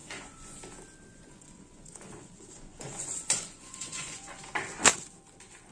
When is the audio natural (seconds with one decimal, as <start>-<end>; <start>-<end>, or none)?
0.6-1.1; 4.4-5.7